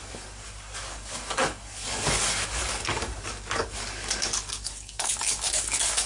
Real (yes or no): no